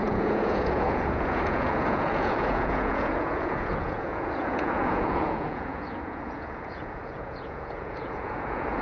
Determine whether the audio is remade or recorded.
remade